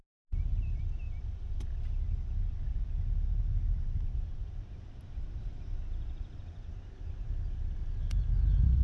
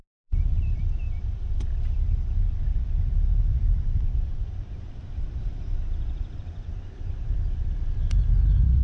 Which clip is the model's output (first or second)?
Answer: second